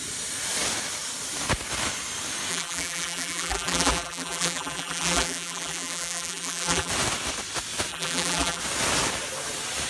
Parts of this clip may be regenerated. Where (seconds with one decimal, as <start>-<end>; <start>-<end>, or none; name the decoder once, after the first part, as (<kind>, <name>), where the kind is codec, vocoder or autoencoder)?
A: 2.5-6.9 (vocoder, BigVGAN v2); 7.9-8.6